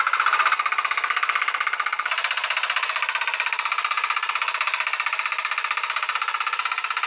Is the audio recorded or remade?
recorded